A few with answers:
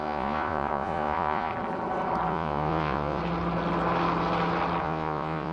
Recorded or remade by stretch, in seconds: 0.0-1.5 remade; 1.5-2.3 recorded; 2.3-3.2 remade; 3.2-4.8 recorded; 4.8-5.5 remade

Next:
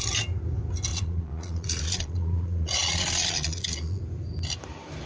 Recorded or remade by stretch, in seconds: 0.0-0.9 recorded; 0.9-4.0 remade; 4.0-5.1 recorded

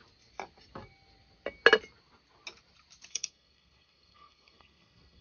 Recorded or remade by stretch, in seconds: 0.0-3.1 recorded; 3.1-5.2 remade